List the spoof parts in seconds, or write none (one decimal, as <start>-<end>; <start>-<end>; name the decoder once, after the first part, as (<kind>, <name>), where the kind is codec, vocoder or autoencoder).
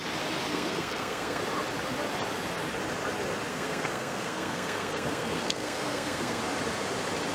0.5-1.4 (codec, SNAC); 3.5-6.4